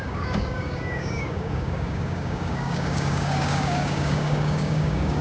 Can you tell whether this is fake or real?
fake